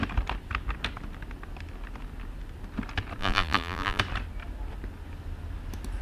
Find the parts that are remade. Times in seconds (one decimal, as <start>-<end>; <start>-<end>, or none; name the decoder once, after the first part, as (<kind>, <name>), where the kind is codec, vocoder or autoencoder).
3.2-4.0 (vocoder, BigVGAN v2)